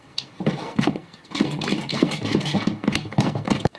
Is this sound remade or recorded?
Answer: remade